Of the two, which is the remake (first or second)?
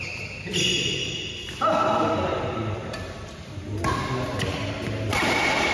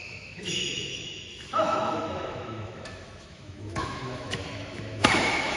second